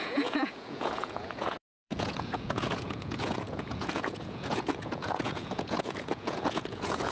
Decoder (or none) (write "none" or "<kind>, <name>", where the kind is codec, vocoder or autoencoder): vocoder, Vocos